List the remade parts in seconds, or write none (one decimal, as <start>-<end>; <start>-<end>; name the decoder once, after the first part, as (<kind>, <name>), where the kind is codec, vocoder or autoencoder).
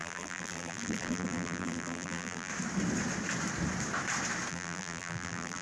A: 0.0-2.5 (vocoder, BigVGAN v2); 4.5-5.6